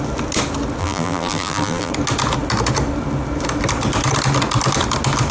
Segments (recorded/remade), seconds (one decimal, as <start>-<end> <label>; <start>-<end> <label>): 0.0-0.8 recorded; 0.8-1.9 remade; 1.9-5.3 recorded